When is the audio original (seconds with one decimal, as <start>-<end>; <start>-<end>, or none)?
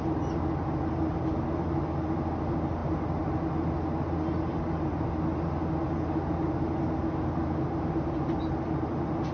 0.0-9.3